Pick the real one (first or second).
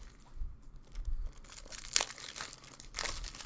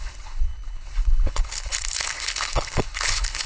first